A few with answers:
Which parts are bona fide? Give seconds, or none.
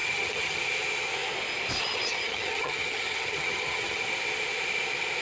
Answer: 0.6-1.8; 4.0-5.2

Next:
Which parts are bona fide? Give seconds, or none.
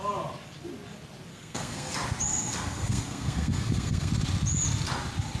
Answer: 0.0-1.3; 1.9-2.3; 4.1-5.4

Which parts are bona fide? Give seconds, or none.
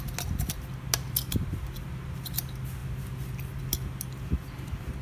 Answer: 0.0-5.0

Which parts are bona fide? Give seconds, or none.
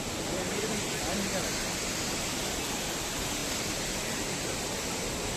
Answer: 0.0-3.4; 4.3-5.4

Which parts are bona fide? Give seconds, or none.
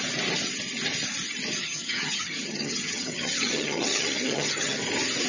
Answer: 0.0-1.6; 4.8-5.3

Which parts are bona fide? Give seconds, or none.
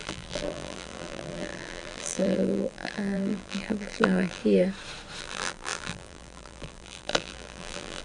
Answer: 4.4-5.2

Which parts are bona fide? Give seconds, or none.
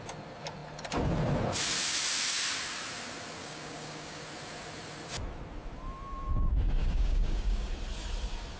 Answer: 0.0-3.4; 4.2-6.8; 7.7-8.6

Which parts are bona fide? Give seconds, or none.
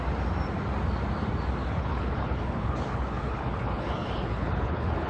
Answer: 0.0-1.6